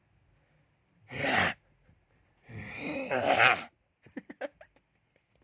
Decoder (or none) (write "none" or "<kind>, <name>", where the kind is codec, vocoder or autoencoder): none